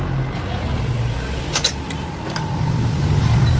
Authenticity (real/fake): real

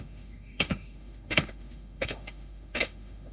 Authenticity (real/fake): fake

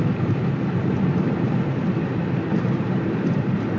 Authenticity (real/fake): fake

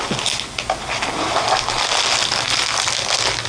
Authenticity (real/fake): real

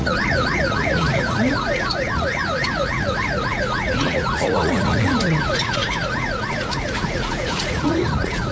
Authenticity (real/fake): fake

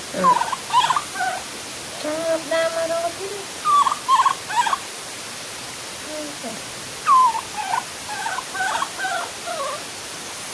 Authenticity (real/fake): real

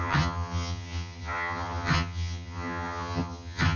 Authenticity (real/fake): fake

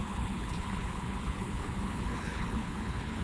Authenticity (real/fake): fake